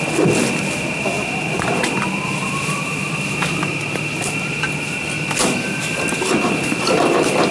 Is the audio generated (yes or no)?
no